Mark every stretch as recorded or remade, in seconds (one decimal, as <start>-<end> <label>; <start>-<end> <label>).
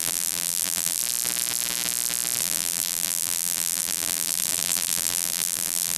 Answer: 0.0-1.0 remade; 1.0-2.4 recorded; 2.4-6.0 remade